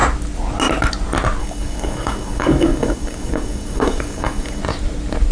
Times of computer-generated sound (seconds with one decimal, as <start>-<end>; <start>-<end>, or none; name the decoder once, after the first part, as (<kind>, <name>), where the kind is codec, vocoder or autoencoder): 1.4-4.6 (codec, DAC)